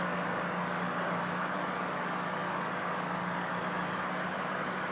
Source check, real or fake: fake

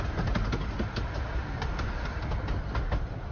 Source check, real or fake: real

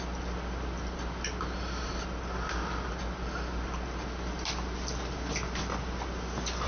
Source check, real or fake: real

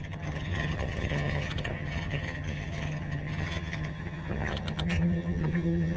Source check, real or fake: fake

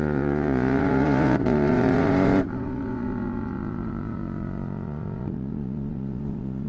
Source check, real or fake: fake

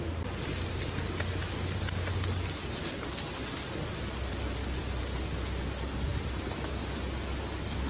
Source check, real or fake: real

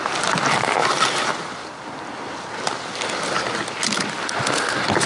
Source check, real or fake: real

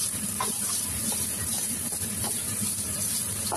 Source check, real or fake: fake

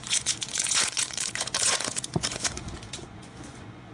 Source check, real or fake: fake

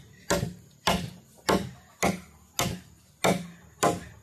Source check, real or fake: real